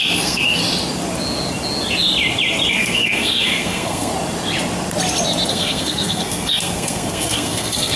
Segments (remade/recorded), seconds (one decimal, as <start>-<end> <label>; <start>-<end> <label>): 0.0-0.6 remade; 0.6-2.7 recorded; 2.7-4.1 remade; 4.1-5.5 recorded; 5.5-8.0 remade